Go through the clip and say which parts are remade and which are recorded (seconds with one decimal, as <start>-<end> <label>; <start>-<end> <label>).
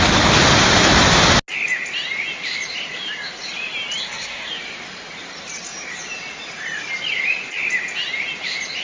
0.0-4.0 recorded; 4.0-4.5 remade; 4.5-8.8 recorded